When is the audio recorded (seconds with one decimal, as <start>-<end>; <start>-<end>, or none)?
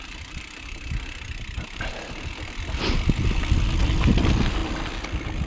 0.0-5.5